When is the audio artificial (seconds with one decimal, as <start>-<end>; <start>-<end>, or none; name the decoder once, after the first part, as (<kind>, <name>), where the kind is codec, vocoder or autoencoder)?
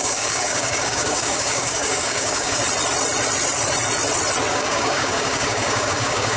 0.0-2.6 (codec, DAC); 4.5-6.4